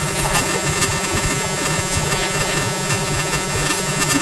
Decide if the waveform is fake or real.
fake